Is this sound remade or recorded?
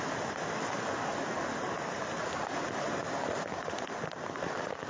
recorded